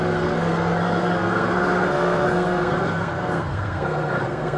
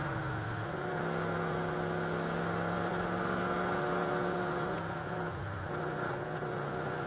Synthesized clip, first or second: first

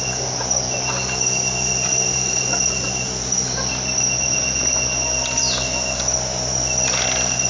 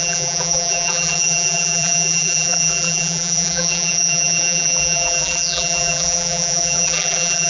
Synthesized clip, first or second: second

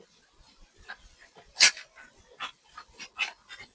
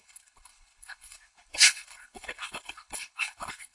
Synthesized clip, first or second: second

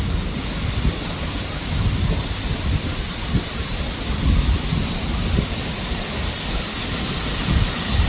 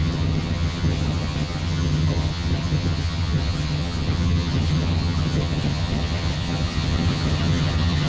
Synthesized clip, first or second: second